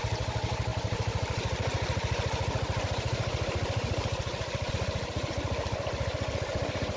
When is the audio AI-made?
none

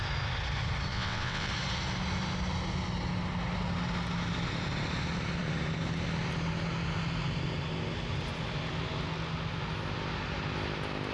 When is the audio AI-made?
0.9-1.5

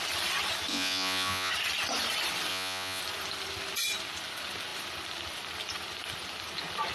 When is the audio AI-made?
0.7-1.5; 2.5-3.0

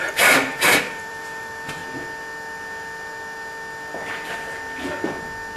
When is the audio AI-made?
0.0-1.8

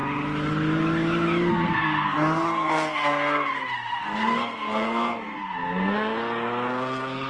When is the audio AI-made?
1.5-7.3

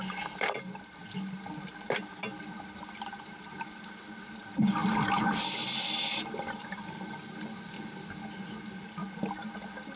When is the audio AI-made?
none

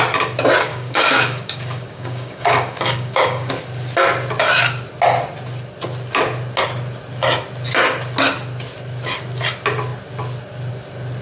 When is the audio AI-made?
0.7-3.5

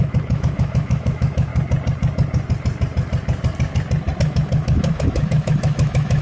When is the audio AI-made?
0.0-1.5; 4.2-6.2